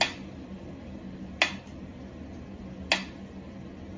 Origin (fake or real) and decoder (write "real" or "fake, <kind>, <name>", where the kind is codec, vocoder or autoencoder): real